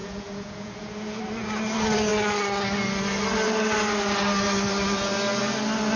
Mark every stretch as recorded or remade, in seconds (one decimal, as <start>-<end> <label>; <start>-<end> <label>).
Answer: 0.0-1.2 remade; 1.2-6.0 recorded